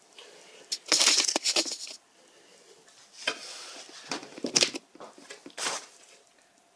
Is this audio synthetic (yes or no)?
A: no